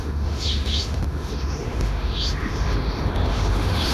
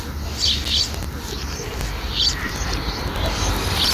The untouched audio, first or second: second